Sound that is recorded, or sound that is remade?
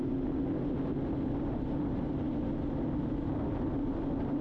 recorded